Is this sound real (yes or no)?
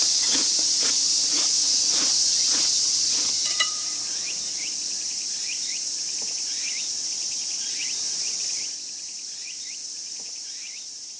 no